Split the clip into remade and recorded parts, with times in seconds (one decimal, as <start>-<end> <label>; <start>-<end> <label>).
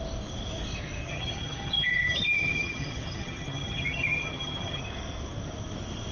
0.0-1.1 recorded; 1.1-4.8 remade; 4.8-6.1 recorded